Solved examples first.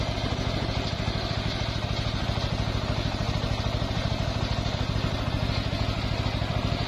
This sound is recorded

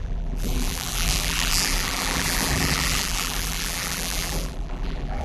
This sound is remade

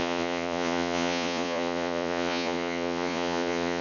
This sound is remade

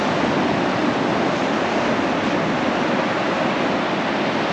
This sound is recorded